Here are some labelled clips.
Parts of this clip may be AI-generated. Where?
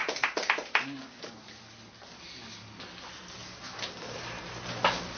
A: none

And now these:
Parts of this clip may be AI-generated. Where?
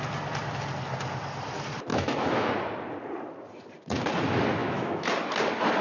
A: 1.9-2.5 (autoencoder, DAC-VAE); 4.6-5.1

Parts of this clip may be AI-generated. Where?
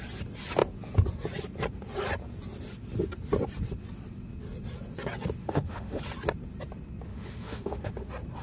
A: 5.4-6.0 (autoencoder, DAC-VAE); 7.1-7.9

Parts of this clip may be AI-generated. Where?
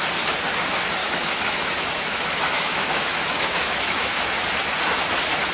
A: 1.0-4.3 (autoencoder, DAC-VAE)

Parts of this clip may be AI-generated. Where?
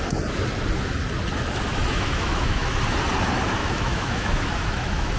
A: 1.7-2.8 (autoencoder, DAC-VAE); 3.6-5.2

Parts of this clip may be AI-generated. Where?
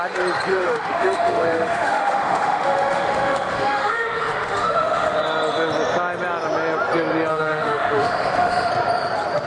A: 0.5-5.2 (autoencoder, DAC-VAE); 7.3-8.7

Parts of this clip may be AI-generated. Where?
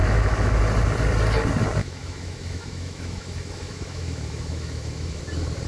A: 0.0-0.6 (autoencoder, DAC-VAE); 1.8-5.2